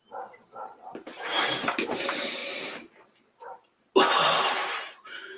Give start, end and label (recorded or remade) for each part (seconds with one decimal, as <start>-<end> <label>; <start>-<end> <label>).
0.0-2.4 remade; 2.4-4.1 recorded; 4.1-5.4 remade